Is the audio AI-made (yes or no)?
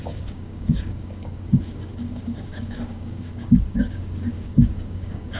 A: yes